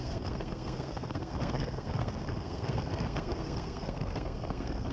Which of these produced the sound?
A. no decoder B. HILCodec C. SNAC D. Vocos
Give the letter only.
C